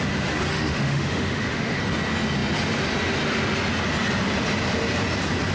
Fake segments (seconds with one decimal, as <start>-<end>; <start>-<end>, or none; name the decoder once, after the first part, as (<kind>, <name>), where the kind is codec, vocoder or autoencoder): 0.5-1.8 (autoencoder, DAC-VAE)